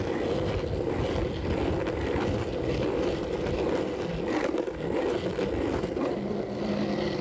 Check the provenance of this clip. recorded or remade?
recorded